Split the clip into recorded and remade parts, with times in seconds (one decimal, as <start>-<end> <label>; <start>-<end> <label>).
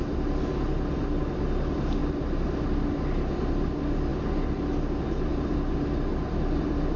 0.0-7.0 recorded